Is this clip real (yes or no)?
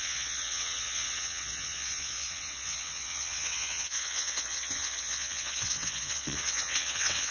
no